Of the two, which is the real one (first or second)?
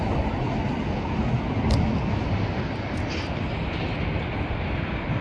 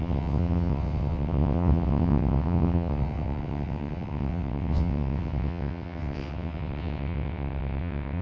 first